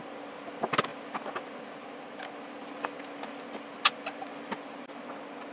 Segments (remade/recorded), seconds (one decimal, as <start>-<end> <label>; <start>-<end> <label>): 0.0-5.5 recorded